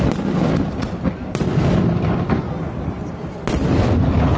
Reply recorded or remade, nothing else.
recorded